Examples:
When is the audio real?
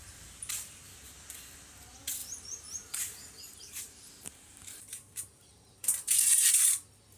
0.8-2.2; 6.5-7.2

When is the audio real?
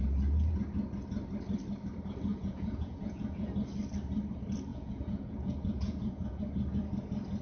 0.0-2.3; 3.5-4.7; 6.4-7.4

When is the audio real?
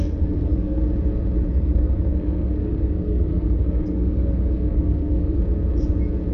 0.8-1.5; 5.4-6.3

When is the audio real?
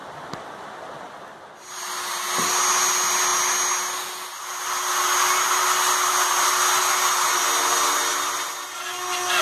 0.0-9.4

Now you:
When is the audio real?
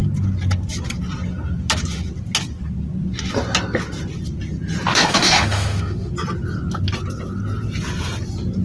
0.0-4.9; 6.1-8.6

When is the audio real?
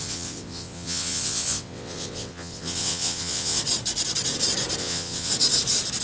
3.6-4.8; 5.3-6.0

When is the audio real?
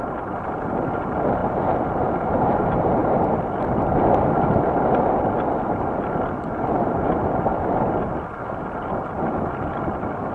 0.0-10.3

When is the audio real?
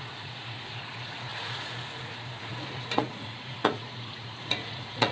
none